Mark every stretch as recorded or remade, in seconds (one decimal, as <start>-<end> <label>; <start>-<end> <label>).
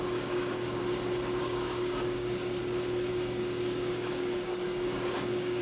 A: 0.0-0.8 remade; 0.8-1.4 recorded; 1.4-2.6 remade; 2.6-3.1 recorded; 3.1-5.6 remade